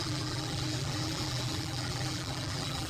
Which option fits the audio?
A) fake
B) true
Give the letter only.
A